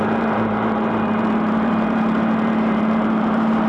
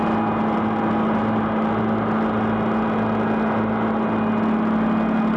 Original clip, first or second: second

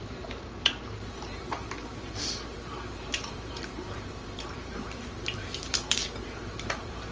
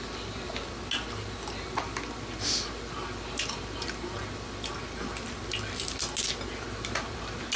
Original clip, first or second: second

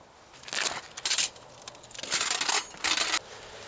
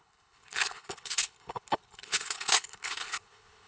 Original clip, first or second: first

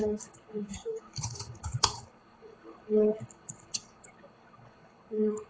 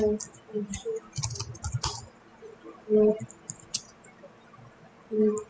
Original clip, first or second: second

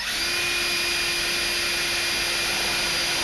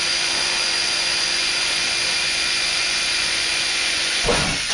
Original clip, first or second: first